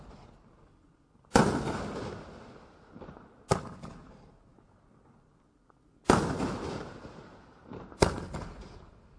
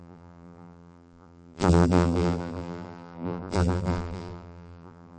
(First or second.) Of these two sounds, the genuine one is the first